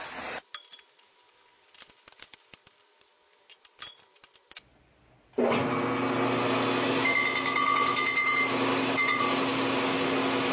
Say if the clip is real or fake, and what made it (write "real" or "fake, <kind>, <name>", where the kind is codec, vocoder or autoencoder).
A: real